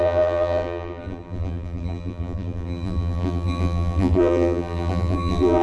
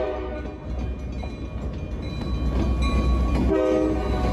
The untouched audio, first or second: second